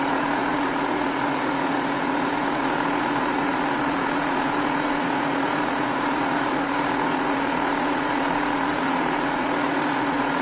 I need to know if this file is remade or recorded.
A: remade